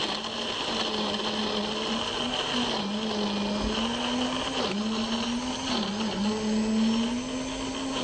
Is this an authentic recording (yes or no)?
yes